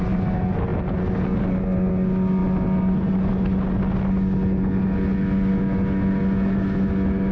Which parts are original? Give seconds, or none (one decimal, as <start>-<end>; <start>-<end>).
0.0-7.3